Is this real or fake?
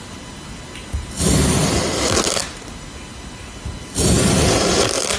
real